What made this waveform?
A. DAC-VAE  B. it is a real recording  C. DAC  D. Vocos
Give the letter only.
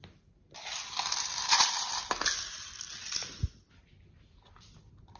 B